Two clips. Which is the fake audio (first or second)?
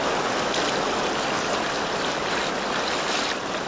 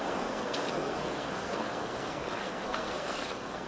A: second